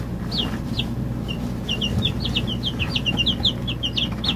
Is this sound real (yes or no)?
yes